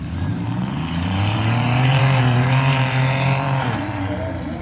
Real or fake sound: fake